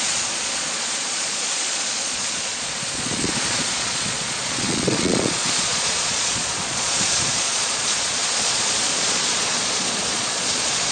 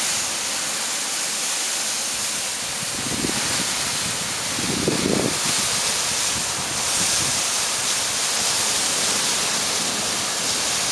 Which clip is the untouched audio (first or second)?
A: second